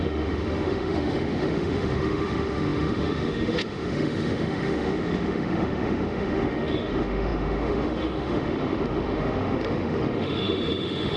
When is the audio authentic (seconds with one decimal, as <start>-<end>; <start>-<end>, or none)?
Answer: none